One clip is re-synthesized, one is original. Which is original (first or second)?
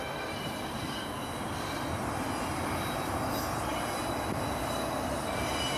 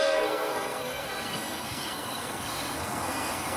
first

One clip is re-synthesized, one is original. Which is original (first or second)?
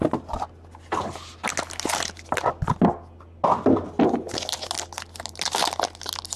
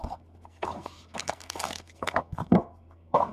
first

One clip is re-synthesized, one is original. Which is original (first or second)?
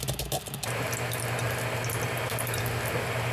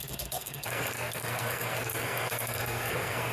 first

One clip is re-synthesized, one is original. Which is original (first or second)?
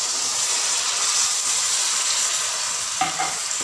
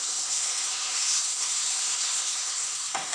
first